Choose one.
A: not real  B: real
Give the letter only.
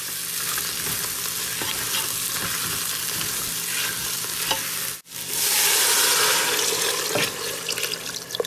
B